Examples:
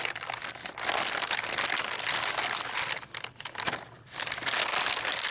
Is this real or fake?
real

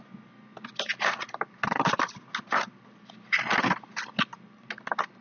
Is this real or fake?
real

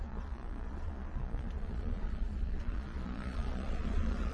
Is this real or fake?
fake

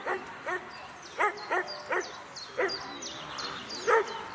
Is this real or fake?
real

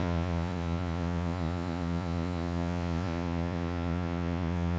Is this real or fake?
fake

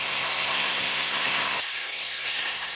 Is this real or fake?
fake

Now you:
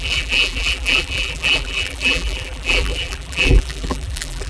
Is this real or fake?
fake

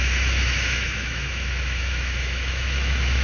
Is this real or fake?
fake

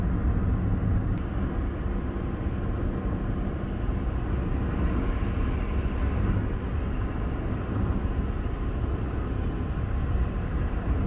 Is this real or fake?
real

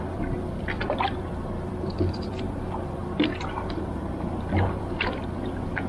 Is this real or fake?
fake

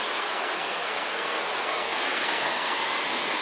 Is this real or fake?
fake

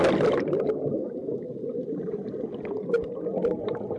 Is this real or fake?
real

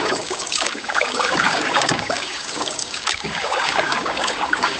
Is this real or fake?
fake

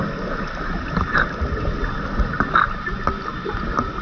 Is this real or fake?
real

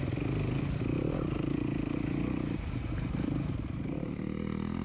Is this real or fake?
real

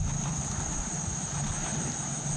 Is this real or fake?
real